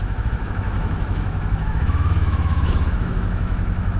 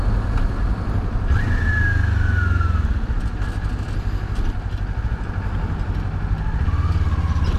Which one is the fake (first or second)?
first